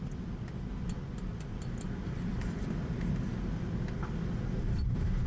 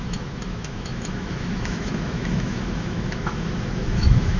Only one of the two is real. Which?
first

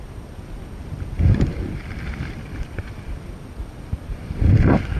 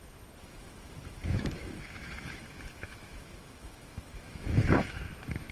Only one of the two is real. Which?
first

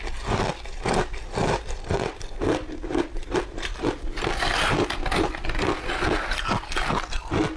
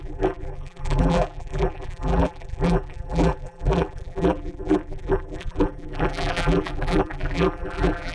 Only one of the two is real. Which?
first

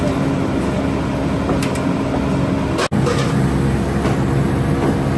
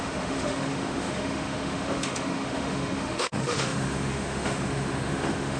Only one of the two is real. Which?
first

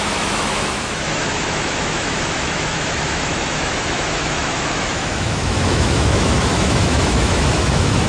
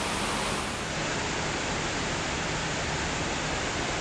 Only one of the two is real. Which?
second